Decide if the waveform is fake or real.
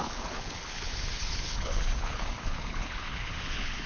fake